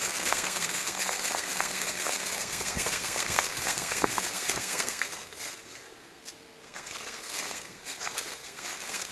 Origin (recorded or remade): remade